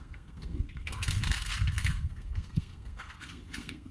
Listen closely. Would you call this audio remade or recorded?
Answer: remade